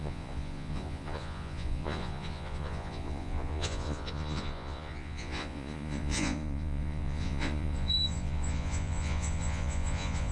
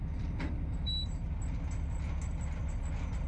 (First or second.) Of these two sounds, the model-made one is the first